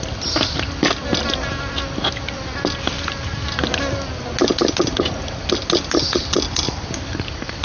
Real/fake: real